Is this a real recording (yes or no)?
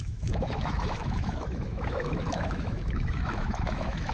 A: no